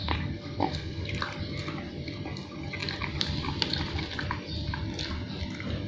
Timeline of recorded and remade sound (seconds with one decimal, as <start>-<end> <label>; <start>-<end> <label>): 0.0-1.0 remade; 1.0-5.9 recorded